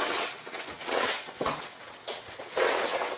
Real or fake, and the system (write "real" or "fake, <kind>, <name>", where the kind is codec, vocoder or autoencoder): fake, vocoder, WaveNeXt